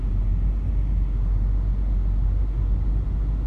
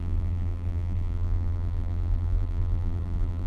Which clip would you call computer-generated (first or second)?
second